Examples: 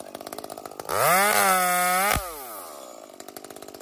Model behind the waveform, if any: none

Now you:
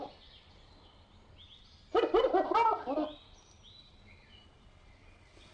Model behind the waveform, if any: none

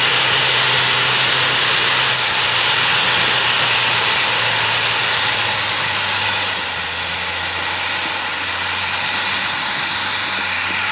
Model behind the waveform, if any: none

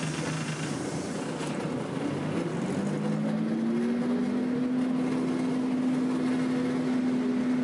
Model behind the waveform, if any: none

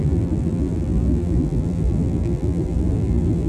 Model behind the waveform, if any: vocoder, BigVGAN v2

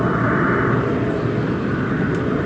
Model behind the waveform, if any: none